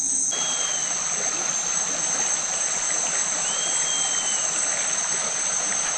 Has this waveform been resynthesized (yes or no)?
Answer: no